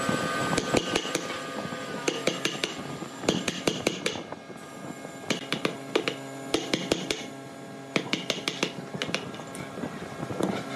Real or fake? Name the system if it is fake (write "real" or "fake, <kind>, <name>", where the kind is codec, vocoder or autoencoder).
real